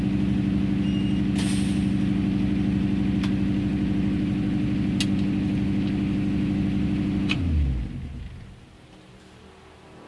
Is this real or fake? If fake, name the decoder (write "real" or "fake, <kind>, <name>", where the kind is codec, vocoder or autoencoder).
real